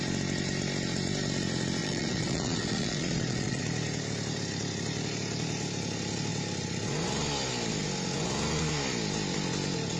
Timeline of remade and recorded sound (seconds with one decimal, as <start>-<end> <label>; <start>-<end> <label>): 0.0-1.8 recorded; 1.8-3.6 remade; 3.6-10.0 recorded